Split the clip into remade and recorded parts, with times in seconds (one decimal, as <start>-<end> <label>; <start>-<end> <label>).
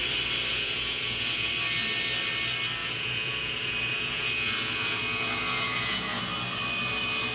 0.0-0.5 recorded; 0.5-1.5 remade; 1.5-2.8 recorded; 2.8-6.2 remade; 6.2-7.3 recorded